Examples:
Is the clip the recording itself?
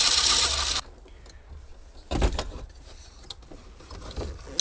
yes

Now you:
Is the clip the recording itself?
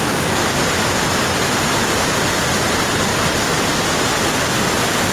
yes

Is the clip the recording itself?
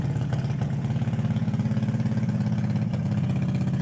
no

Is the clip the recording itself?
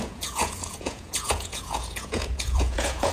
no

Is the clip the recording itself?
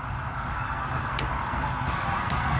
no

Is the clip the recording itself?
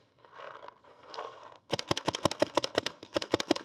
no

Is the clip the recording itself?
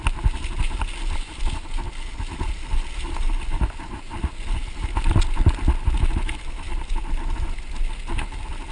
yes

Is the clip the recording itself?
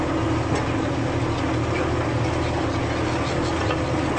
yes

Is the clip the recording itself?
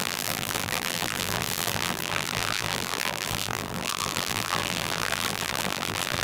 no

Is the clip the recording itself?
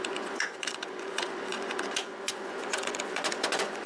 no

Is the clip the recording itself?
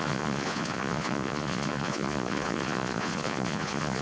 no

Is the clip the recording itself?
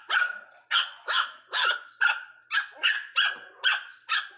yes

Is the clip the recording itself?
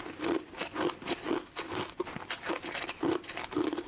yes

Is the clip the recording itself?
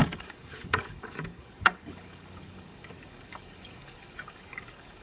no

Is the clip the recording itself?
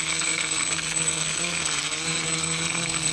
no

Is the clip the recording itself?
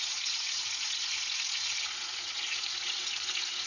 no